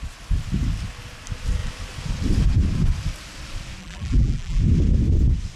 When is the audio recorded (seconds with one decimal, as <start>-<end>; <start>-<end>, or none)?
0.0-3.8; 4.6-5.6